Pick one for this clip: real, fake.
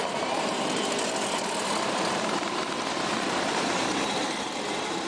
fake